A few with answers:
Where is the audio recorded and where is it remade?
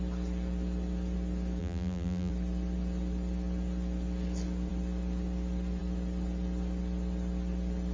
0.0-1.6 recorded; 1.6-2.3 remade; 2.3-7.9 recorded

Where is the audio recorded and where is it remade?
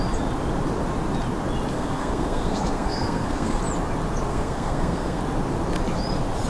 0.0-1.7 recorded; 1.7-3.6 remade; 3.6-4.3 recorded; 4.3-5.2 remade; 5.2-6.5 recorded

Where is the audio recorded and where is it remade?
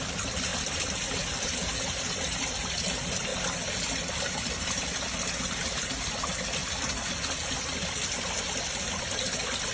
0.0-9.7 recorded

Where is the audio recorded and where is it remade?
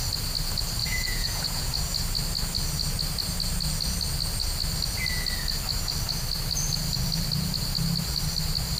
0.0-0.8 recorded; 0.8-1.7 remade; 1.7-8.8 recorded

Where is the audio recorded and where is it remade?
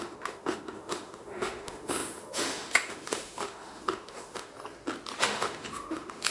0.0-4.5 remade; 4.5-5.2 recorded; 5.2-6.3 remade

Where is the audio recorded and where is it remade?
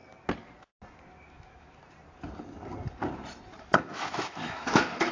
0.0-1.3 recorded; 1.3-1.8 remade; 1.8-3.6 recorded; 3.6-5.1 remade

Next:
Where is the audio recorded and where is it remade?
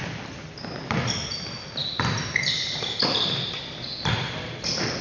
0.0-5.0 recorded